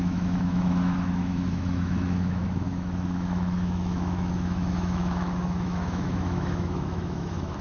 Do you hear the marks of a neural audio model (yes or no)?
yes